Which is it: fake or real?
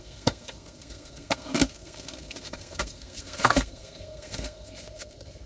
fake